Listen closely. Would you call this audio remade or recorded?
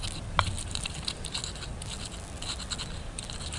recorded